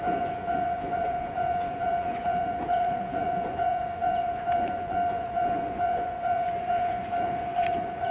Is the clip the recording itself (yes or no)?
no